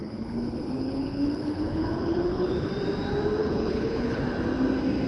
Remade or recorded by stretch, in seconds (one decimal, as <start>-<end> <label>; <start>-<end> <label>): 0.0-2.7 remade; 2.7-3.4 recorded; 3.4-4.2 remade; 4.2-5.1 recorded